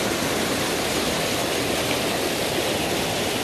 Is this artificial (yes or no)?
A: no